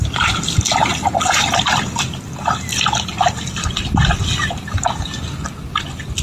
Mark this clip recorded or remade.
recorded